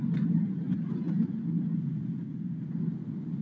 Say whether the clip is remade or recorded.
recorded